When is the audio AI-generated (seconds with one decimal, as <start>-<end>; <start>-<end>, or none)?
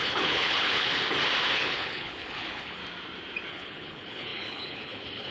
0.0-0.9; 1.5-2.8; 3.5-5.3